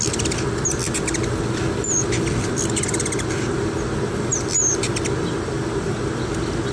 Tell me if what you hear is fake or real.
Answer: real